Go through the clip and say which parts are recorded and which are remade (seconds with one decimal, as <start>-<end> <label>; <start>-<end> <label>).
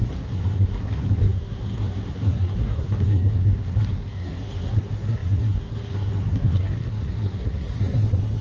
0.0-8.4 remade